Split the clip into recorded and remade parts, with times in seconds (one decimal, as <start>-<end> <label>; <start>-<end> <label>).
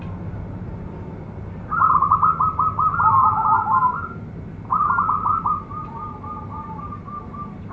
0.0-7.7 recorded